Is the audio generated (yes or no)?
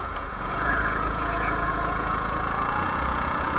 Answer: yes